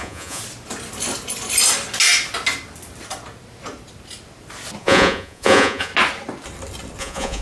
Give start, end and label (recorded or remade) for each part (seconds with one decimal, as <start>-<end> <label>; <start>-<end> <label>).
0.0-0.4 remade; 0.4-4.8 recorded; 4.8-5.9 remade; 5.9-7.0 recorded; 7.0-7.4 remade